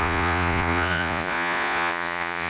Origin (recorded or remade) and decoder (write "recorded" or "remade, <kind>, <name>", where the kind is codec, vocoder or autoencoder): remade, vocoder, Vocos